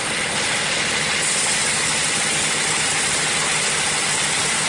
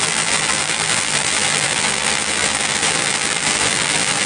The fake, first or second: second